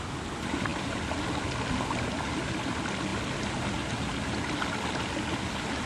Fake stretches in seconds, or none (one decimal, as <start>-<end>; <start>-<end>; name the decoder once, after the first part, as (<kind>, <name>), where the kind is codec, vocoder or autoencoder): none